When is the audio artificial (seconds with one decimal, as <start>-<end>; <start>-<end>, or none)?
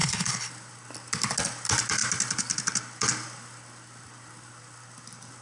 0.0-0.5